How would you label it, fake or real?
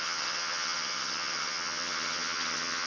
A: fake